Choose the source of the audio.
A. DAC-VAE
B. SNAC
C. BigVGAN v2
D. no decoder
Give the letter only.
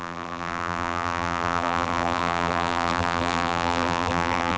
C